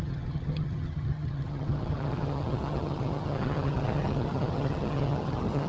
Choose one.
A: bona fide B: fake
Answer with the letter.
B